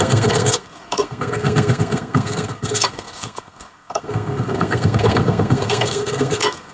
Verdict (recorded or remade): remade